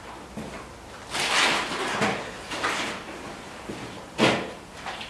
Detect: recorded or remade recorded